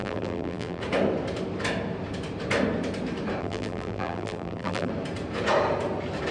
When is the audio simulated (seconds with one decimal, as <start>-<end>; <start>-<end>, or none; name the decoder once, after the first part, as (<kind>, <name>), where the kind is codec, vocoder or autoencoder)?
0.0-0.8 (vocoder, BigVGAN v2); 3.4-4.9